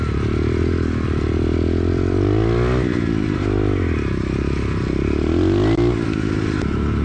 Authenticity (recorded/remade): recorded